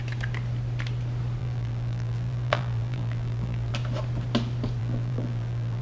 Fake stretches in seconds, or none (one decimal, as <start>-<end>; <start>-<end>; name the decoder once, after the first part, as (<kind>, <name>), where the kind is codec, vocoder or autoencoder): 1.4-3.7 (vocoder, BigVGAN v2); 4.8-5.8